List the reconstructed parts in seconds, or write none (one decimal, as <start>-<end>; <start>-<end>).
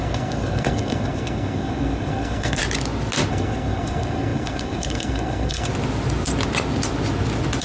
0.0-2.6; 3.3-5.7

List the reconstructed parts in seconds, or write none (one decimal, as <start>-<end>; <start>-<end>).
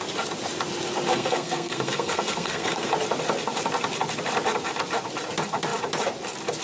1.1-2.9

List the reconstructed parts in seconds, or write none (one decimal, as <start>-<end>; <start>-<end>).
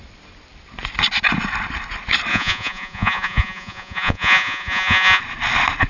2.3-5.2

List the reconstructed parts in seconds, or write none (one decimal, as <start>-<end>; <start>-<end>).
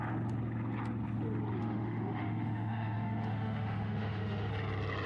1.6-4.5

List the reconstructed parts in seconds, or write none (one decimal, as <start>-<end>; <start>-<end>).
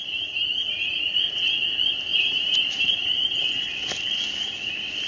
2.1-3.4